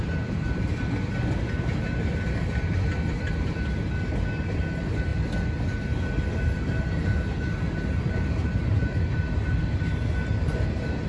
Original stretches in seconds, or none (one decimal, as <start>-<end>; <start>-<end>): 0.0-11.1